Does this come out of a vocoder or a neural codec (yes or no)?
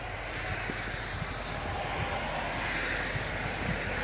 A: no